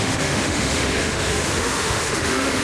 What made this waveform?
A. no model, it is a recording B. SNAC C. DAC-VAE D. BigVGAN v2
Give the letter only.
C